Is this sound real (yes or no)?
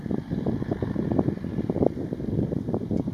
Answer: yes